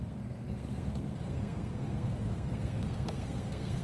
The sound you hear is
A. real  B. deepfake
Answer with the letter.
B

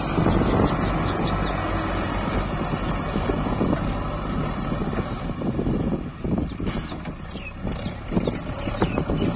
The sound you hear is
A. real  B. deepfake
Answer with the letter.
A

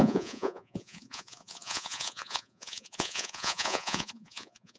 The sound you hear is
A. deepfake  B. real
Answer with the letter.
A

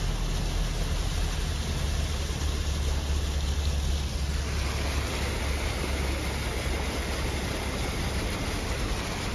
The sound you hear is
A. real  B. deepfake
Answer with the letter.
A